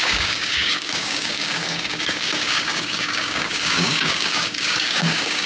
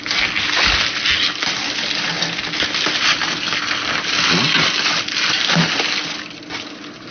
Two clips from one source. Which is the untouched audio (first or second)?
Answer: second